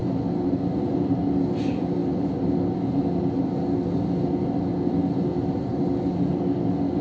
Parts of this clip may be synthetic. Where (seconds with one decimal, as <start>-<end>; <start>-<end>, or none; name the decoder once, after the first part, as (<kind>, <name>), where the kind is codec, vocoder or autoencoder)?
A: none